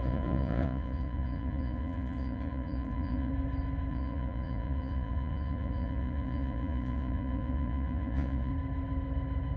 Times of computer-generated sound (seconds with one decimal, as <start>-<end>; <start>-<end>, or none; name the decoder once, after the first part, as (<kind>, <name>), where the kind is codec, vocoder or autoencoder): 0.0-3.3 (vocoder, Vocos); 3.9-8.5